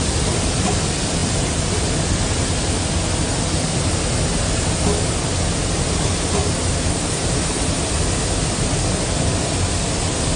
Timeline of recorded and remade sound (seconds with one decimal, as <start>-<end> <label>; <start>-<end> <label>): 0.0-10.4 recorded